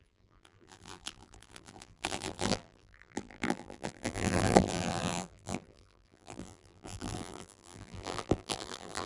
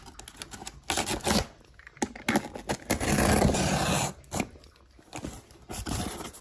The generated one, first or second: first